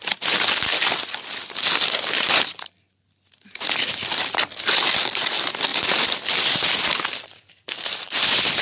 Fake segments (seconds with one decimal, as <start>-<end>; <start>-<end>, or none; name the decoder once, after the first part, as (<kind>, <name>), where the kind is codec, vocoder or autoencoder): none